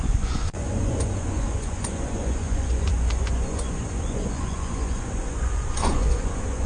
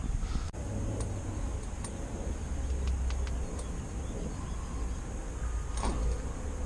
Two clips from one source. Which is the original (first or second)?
second